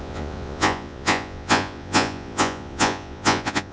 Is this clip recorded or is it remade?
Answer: remade